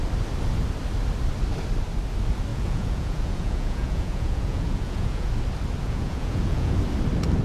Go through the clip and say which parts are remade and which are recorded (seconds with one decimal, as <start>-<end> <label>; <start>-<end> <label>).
0.0-2.5 recorded; 2.5-5.3 remade; 5.3-5.8 recorded; 5.8-6.8 remade; 6.8-7.4 recorded